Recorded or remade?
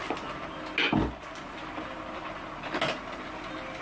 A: recorded